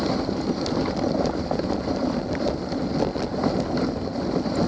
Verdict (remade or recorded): recorded